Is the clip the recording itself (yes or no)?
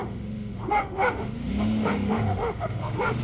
no